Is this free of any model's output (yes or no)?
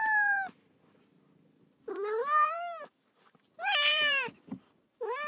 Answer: no